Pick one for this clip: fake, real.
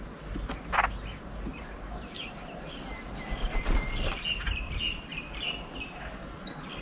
real